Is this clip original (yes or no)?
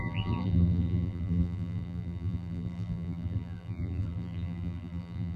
no